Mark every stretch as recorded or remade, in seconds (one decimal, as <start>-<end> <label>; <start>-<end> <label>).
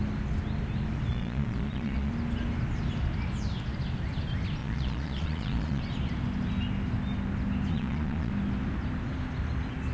0.0-1.1 recorded; 1.1-2.1 remade; 2.1-4.6 recorded; 4.6-5.8 remade; 5.8-7.7 recorded; 7.7-8.3 remade; 8.3-9.9 recorded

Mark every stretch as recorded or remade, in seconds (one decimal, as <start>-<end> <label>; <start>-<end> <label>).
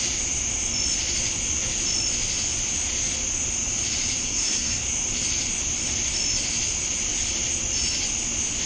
0.0-4.2 recorded; 4.2-4.8 remade; 4.8-8.7 recorded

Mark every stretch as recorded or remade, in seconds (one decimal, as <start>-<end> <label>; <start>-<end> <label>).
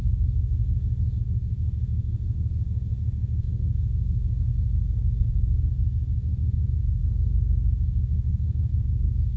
0.0-0.6 remade; 0.6-1.2 recorded; 1.2-9.4 remade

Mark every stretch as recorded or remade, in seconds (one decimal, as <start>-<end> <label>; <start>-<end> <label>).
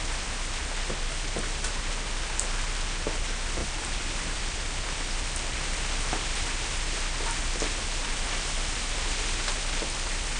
0.0-3.6 recorded; 3.6-5.2 remade; 5.2-10.4 recorded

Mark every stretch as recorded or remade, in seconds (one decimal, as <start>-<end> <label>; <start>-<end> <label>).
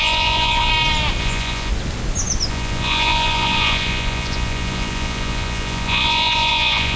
0.0-0.7 remade; 0.7-1.2 recorded; 1.2-1.7 remade; 1.7-2.5 recorded; 2.5-7.0 remade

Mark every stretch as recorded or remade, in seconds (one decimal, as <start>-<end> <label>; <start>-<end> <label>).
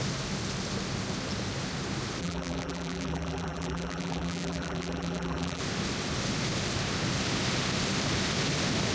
0.0-2.2 recorded; 2.2-5.6 remade; 5.6-8.9 recorded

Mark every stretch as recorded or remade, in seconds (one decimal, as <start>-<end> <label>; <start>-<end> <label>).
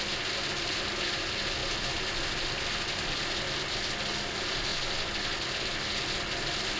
0.0-6.8 recorded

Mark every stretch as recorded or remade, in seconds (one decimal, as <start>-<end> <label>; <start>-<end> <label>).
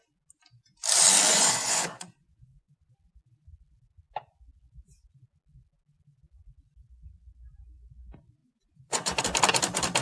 0.0-1.3 recorded; 1.3-2.8 remade; 2.8-8.4 recorded; 8.4-9.2 remade; 9.2-10.0 recorded